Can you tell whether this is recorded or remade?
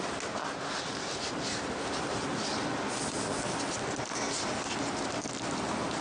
recorded